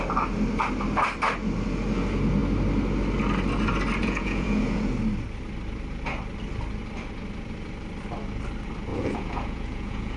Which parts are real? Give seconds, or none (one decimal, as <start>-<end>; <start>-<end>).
0.0-4.0; 4.9-8.9